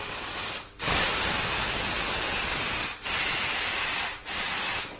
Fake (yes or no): no